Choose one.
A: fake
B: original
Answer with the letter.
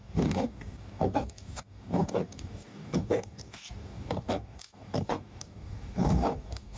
A